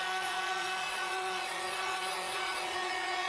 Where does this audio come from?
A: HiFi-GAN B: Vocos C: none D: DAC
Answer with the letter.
B